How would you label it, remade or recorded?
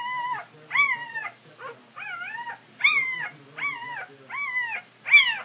recorded